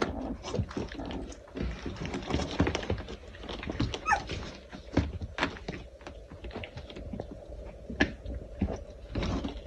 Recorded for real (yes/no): yes